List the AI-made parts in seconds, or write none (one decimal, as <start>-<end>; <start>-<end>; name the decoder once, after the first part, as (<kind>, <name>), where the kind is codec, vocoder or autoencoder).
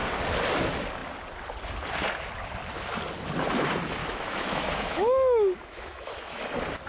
4.0-6.4 (autoencoder, DAC-VAE)